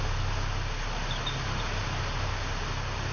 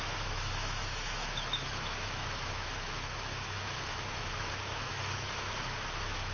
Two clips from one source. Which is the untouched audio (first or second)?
first